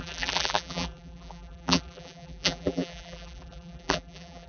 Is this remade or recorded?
remade